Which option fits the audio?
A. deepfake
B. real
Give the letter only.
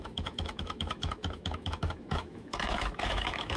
A